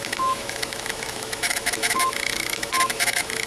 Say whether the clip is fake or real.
fake